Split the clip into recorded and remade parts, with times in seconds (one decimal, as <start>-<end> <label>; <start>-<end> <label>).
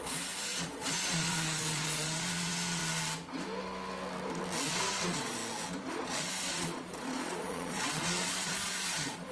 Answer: 0.0-2.8 remade; 2.8-4.7 recorded; 4.7-5.4 remade; 5.4-5.9 recorded; 5.9-9.3 remade